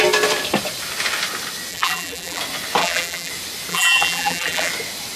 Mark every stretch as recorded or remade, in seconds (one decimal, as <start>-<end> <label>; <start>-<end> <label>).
0.0-1.7 recorded; 1.7-2.4 remade; 2.4-2.8 recorded; 2.8-3.3 remade; 3.3-3.7 recorded; 3.7-4.7 remade; 4.7-5.2 recorded